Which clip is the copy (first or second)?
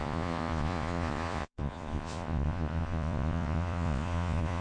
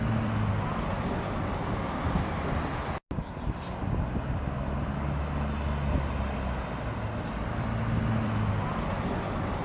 first